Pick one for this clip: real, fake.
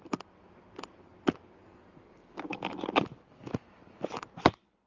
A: real